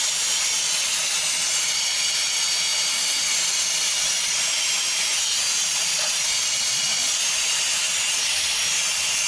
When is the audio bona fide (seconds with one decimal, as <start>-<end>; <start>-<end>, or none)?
0.0-9.3